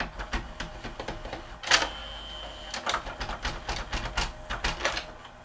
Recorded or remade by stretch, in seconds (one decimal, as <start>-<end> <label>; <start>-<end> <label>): 0.0-5.4 recorded